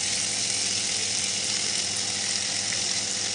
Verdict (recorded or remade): recorded